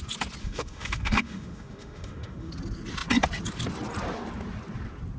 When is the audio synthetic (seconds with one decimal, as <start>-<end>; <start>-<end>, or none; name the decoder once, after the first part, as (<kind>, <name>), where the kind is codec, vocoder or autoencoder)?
0.4-2.5 (autoencoder, DAC-VAE)